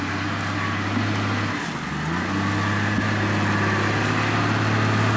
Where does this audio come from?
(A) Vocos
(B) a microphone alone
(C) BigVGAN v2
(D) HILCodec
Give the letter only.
B